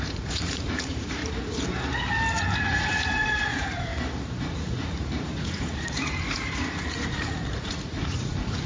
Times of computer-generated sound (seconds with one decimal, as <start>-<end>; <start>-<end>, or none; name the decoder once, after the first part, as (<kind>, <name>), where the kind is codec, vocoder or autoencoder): 0.0-1.2 (vocoder, Vocos); 2.5-3.9; 4.4-8.7